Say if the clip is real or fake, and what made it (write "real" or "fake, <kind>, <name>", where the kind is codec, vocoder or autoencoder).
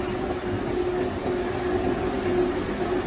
real